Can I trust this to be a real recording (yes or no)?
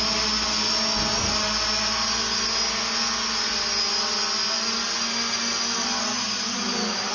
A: yes